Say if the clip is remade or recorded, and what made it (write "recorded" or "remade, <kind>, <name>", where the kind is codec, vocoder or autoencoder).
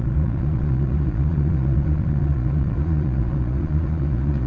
remade, vocoder, Vocos